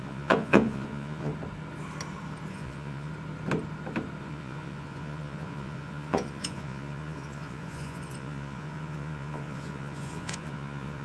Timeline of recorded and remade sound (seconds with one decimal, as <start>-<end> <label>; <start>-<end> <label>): 0.0-1.3 remade; 1.3-2.5 recorded; 2.5-3.1 remade; 3.1-4.2 recorded; 4.2-11.0 remade